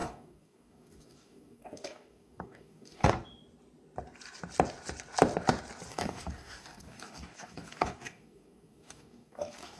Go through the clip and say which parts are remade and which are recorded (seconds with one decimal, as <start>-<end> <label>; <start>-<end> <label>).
0.0-3.1 remade; 3.1-5.9 recorded; 5.9-9.8 remade